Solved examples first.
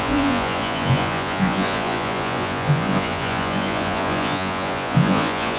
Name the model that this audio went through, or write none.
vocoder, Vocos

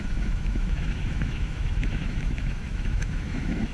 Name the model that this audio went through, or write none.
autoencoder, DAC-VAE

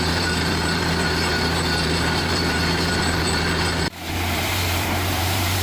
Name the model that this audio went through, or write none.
vocoder, BigVGAN v2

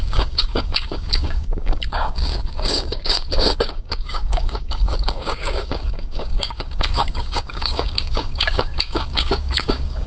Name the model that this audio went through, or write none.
codec, DAC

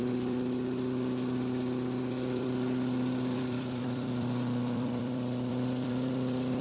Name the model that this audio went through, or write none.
vocoder, BigVGAN v2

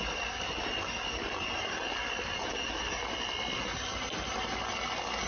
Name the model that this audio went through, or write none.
none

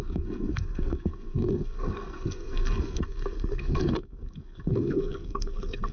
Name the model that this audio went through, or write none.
codec, SNAC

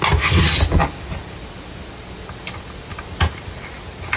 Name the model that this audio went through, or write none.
none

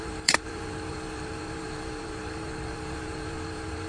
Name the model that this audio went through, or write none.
vocoder, BigVGAN v2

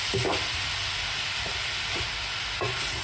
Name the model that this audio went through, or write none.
none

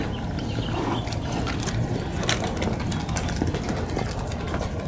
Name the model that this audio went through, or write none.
none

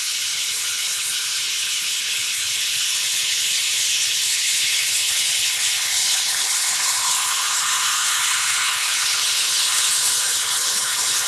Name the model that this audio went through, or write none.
codec, HILCodec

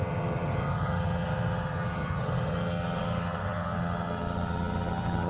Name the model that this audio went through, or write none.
vocoder, HiFi-GAN